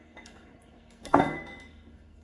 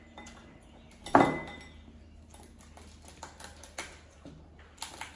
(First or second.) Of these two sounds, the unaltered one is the second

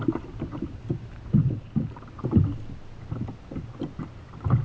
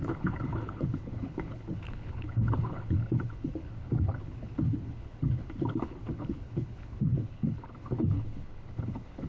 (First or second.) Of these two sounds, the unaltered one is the first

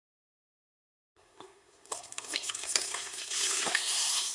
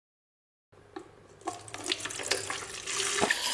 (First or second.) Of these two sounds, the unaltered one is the second